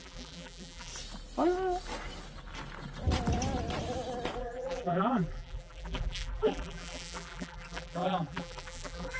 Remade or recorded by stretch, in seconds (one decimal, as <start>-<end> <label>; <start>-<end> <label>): 0.0-0.9 remade; 0.9-4.4 recorded; 4.4-9.2 remade